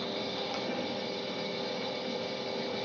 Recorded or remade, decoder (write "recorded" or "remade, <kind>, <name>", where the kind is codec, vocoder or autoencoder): recorded